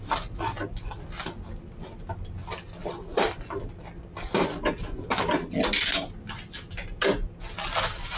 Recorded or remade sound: recorded